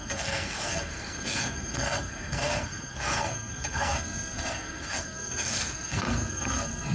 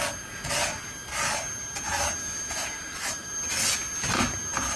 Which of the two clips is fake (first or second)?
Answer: first